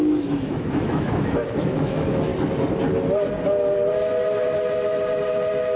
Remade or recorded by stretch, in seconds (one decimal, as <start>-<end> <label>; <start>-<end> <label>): 0.0-2.3 remade; 2.3-5.8 recorded